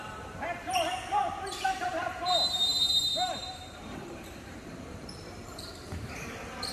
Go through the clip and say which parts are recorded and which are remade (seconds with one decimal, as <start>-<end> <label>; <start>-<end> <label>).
0.0-6.7 remade